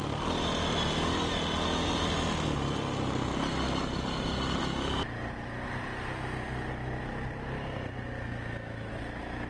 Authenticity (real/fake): real